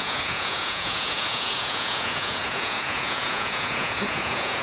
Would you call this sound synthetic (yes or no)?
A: yes